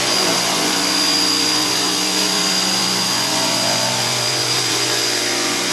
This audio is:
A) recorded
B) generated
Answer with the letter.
B